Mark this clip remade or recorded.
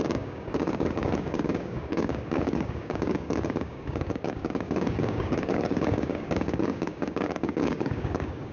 remade